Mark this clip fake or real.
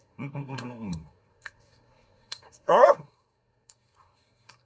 fake